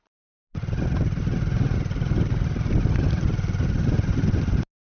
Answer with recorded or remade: recorded